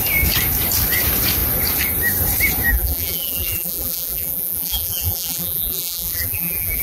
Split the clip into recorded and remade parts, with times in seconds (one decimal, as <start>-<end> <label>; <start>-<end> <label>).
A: 0.0-2.7 recorded; 2.7-6.8 remade